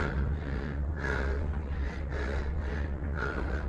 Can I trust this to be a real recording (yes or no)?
no